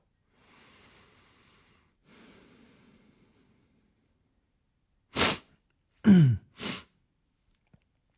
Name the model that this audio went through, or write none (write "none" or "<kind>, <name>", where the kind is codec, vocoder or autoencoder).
none